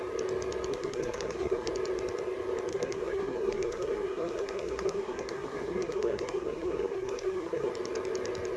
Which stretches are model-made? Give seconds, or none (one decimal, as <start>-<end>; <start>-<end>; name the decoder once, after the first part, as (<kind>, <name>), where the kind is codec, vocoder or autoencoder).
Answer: 0.7-1.7 (codec, SNAC); 2.7-7.7

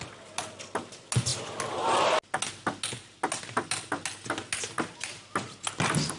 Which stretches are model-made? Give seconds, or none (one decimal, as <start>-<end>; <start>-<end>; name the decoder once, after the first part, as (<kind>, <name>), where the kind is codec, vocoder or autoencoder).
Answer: none

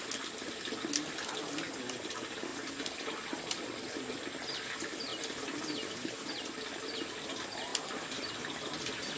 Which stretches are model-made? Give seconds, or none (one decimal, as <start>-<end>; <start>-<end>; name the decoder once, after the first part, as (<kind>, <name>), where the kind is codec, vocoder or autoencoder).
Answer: 2.5-4.1 (vocoder, BigVGAN v2); 5.1-5.6; 7.7-8.3

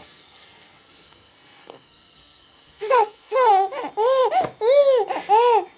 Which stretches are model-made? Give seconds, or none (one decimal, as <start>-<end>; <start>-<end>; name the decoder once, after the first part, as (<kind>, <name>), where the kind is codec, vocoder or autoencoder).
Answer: 0.0-3.5 (codec, SNAC)